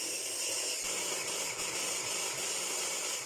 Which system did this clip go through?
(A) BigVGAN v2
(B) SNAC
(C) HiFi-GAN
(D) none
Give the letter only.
D